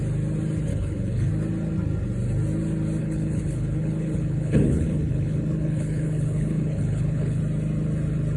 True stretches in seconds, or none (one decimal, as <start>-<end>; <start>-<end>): 0.0-0.7; 1.3-3.0; 7.4-8.4